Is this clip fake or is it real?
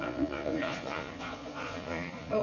fake